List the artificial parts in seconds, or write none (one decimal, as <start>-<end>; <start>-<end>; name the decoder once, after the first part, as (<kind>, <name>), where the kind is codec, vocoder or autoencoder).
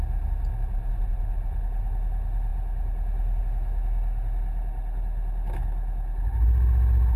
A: none